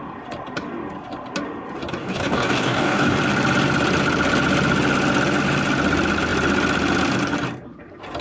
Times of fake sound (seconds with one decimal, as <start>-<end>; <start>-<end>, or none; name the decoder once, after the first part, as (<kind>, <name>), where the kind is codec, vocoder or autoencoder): 2.0-3.2 (codec, DAC)